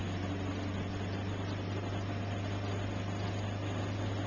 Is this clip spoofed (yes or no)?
no